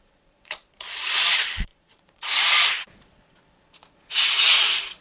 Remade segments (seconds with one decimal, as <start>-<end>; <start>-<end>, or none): 0.0-5.0